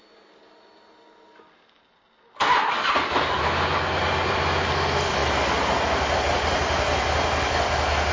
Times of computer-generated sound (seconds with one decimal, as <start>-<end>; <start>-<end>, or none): none